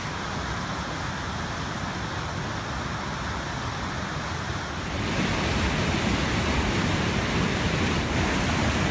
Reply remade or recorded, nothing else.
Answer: recorded